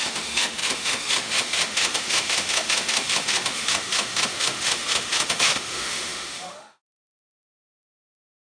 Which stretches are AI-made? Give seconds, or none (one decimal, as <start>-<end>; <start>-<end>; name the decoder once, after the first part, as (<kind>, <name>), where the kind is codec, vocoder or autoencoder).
0.0-8.6 (autoencoder, DAC-VAE)